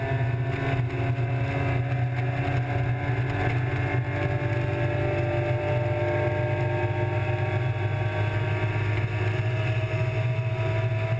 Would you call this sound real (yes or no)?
yes